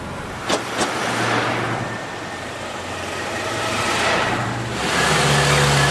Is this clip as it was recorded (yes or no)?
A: yes